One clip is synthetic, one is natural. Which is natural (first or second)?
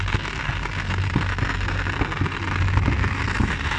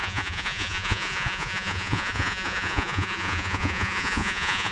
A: first